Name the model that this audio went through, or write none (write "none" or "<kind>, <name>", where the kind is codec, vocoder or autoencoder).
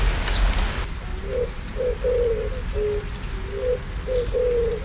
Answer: none